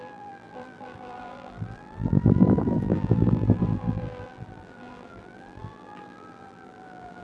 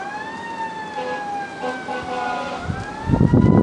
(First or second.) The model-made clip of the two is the first